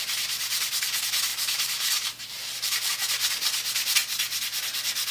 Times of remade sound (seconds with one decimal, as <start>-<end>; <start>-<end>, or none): 1.3-2.9